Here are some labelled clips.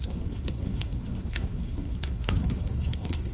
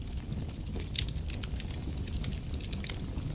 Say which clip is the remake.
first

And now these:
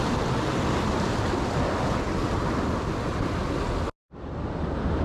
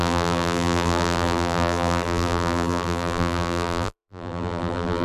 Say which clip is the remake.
second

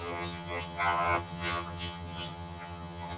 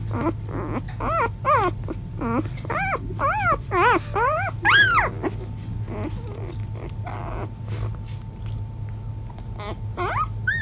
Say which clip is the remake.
first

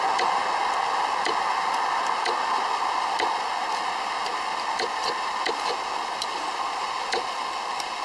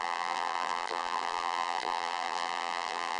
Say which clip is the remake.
second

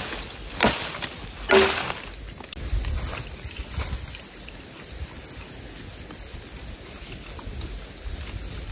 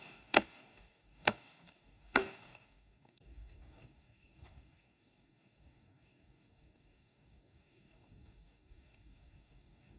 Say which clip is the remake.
second